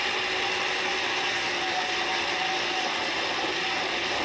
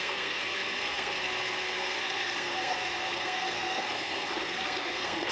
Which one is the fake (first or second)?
second